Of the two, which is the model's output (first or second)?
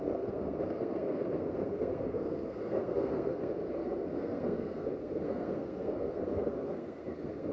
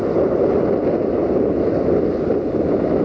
first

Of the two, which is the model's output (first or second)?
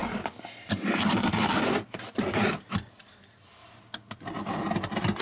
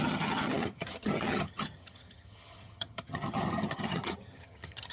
second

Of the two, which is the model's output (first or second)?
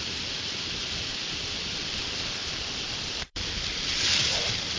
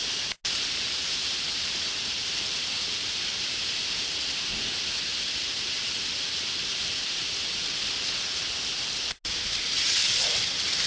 first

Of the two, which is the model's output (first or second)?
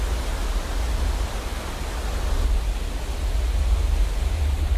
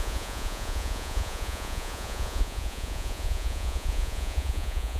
second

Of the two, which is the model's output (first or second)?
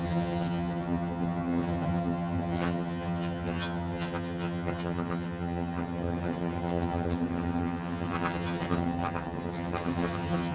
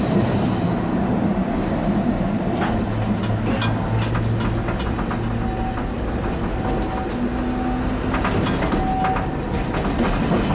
first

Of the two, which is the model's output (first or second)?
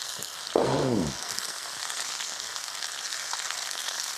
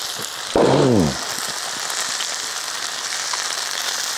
first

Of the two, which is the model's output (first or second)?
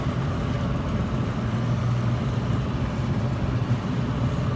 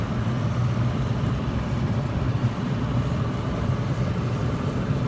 second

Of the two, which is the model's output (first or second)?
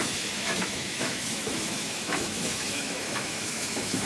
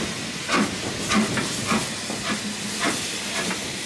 first